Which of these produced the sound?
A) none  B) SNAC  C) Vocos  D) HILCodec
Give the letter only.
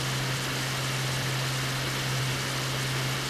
A